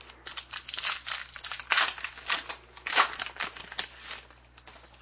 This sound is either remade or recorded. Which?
recorded